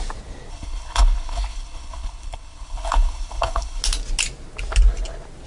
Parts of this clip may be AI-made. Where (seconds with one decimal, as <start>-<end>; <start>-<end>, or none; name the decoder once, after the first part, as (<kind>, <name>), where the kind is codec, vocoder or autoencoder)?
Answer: 0.5-3.8 (codec, HILCodec)